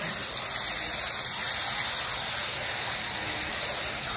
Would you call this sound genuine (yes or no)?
yes